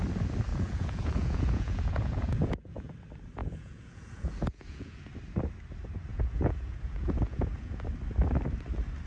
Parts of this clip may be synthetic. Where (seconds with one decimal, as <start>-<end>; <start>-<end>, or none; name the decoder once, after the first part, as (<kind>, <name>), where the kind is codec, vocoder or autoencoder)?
0.5-2.9 (vocoder, Vocos); 3.4-5.1; 6.1-7.8